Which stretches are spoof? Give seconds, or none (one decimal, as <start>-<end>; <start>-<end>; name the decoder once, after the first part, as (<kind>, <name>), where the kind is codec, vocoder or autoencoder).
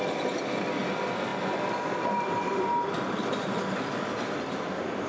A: none